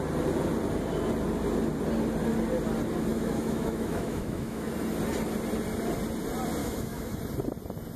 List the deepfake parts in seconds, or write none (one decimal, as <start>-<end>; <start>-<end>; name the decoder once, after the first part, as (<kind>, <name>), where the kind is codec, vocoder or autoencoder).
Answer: 3.1-4.7 (autoencoder, DAC-VAE); 6.6-7.2